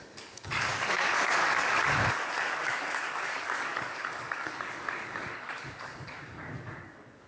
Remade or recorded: remade